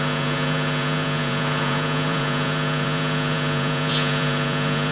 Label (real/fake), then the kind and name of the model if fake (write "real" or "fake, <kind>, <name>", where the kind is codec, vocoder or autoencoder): fake, vocoder, Vocos